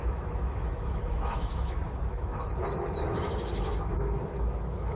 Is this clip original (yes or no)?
no